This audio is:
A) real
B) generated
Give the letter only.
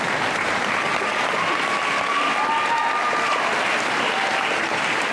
A